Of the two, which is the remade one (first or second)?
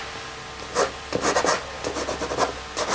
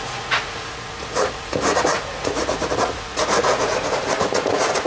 second